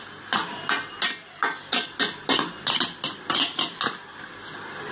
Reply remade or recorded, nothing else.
recorded